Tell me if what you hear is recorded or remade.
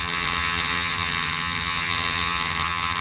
remade